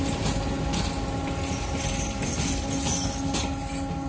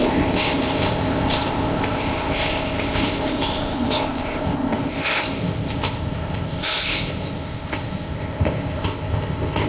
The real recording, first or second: first